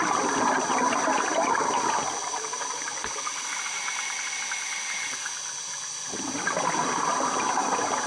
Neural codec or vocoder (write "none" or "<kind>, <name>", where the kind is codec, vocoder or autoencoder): none